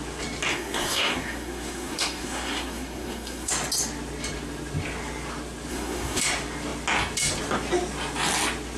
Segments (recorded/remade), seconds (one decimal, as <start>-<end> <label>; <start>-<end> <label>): 0.0-0.5 recorded; 0.5-3.5 remade; 3.5-5.7 recorded; 5.7-6.2 remade; 6.2-8.8 recorded